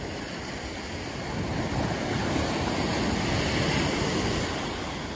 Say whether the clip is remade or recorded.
recorded